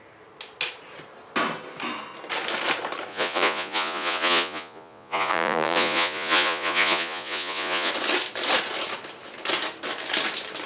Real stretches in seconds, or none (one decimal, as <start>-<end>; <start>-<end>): 0.0-3.1; 7.9-10.7